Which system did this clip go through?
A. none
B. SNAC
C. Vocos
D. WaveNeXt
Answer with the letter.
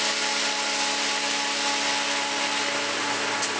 A